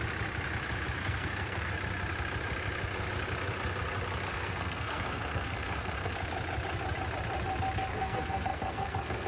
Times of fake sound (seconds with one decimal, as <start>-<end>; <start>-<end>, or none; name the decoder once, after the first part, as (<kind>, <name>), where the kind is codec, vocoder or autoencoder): 1.0-1.7 (codec, SNAC); 4.3-6.1; 7.9-9.3